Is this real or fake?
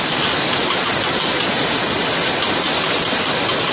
fake